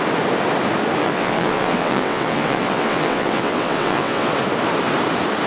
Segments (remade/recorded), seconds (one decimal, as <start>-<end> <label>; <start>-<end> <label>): 0.0-1.0 recorded; 1.0-4.3 remade; 4.3-5.5 recorded